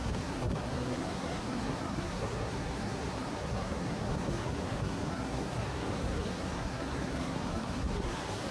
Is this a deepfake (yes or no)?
yes